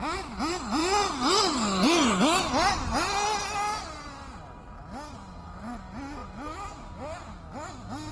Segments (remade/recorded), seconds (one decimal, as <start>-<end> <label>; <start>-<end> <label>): 0.0-8.1 recorded